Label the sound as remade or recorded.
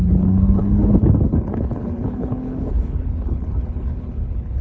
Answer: remade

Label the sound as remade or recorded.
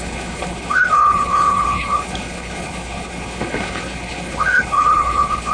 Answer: remade